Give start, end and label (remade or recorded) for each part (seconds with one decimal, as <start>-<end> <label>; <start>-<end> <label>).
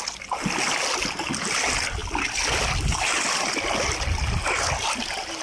0.0-5.4 recorded